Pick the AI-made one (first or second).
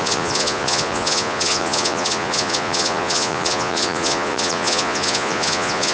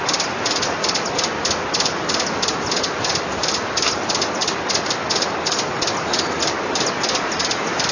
first